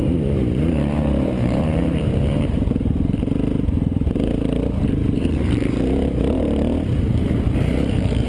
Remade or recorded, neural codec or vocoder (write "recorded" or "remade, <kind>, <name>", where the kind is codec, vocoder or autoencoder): remade, vocoder, BigVGAN v2